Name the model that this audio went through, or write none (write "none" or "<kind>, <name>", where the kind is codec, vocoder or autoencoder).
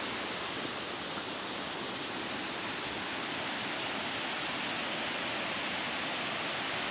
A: none